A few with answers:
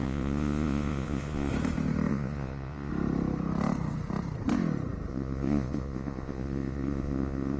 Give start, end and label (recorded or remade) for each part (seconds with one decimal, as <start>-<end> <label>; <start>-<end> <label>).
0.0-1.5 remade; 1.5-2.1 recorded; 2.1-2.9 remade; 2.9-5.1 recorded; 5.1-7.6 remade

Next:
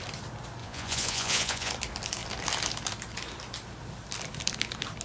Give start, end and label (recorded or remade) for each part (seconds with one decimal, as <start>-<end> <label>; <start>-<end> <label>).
0.0-0.6 recorded; 0.6-1.7 remade; 1.7-5.0 recorded

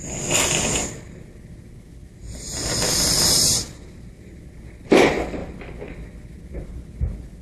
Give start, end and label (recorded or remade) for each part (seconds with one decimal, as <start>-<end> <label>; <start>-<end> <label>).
0.0-7.4 recorded

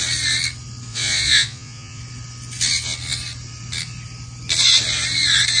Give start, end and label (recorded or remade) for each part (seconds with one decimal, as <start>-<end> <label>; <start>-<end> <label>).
0.0-0.9 recorded; 0.9-2.0 remade; 2.0-5.6 recorded

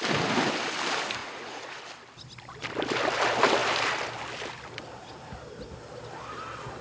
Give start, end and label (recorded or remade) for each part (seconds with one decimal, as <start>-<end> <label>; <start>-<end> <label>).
0.0-1.2 recorded; 1.2-1.8 remade; 1.8-6.8 recorded

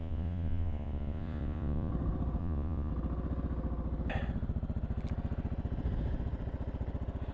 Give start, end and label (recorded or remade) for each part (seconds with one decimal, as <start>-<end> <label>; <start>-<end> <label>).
0.0-1.9 remade; 1.9-2.4 recorded; 2.4-2.9 remade; 2.9-7.3 recorded